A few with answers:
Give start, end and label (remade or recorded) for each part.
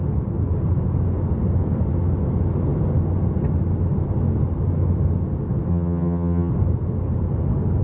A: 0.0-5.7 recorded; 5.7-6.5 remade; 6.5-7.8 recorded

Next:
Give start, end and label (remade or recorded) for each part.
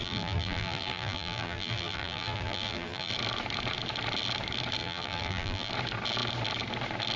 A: 0.0-3.1 remade; 3.1-4.8 recorded; 4.8-5.7 remade; 5.7-7.2 recorded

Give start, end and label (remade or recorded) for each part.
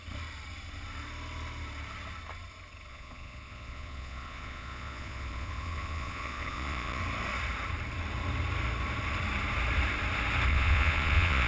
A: 0.0-2.9 recorded; 2.9-7.0 remade; 7.0-10.5 recorded; 10.5-11.5 remade